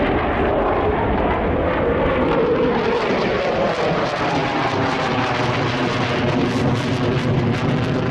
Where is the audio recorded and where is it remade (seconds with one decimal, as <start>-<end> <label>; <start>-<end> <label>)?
0.0-8.1 recorded